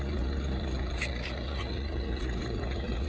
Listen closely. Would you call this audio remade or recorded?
remade